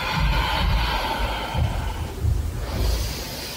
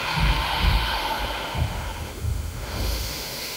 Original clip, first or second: first